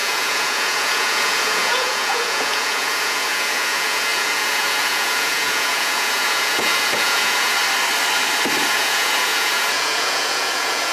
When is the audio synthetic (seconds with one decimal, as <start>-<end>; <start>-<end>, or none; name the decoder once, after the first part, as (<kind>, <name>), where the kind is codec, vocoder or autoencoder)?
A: 0.0-7.6 (vocoder, Vocos); 8.7-10.9